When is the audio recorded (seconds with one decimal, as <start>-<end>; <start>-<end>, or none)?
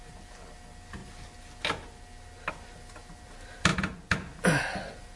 0.0-5.2